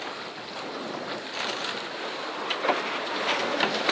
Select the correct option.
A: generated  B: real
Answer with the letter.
B